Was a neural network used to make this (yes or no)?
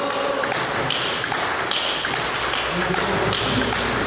no